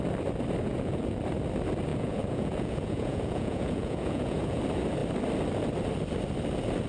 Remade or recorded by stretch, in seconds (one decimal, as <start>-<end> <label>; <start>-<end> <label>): 0.0-0.6 recorded; 0.6-1.2 remade; 1.2-1.9 recorded; 1.9-4.6 remade; 4.6-6.9 recorded